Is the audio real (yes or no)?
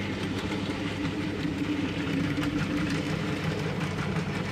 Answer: no